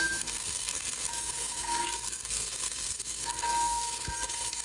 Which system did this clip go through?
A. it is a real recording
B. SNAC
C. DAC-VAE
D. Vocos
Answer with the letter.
B